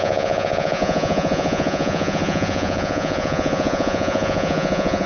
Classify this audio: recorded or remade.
remade